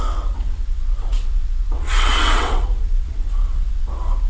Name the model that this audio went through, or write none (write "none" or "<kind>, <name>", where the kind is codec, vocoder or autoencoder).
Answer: vocoder, WaveNeXt